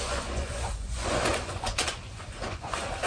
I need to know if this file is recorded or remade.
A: remade